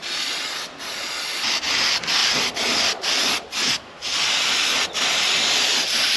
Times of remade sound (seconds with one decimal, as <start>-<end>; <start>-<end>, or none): none